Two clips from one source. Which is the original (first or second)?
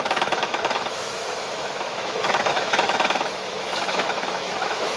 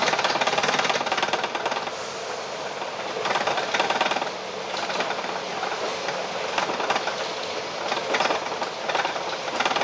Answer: second